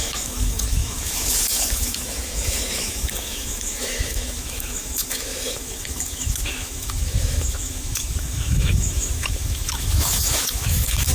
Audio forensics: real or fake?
fake